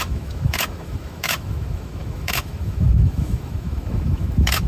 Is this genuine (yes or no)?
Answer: no